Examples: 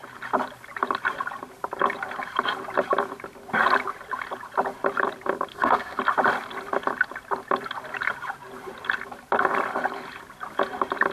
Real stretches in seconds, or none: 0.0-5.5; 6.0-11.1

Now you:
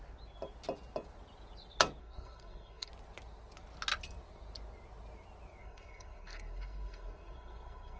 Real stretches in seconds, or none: 0.0-2.0; 2.9-5.6

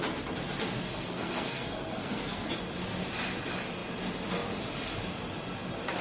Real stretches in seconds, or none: 0.0-0.9; 2.6-6.0